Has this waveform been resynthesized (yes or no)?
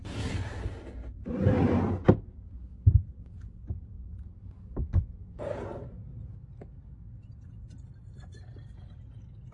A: no